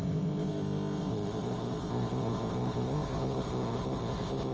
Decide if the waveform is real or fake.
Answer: fake